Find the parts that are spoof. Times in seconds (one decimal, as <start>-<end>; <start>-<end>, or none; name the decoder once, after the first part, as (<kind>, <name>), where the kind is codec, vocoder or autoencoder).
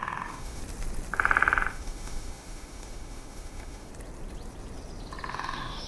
0.0-0.6 (autoencoder, DAC-VAE); 1.7-3.9; 5.3-5.9